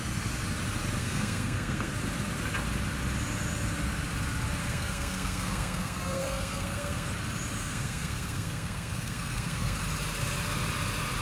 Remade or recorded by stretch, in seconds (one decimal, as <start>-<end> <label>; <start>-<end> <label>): 0.0-1.0 recorded; 1.0-1.9 remade; 1.9-4.6 recorded; 4.6-7.1 remade; 7.1-7.6 recorded; 7.6-9.8 remade; 9.8-11.2 recorded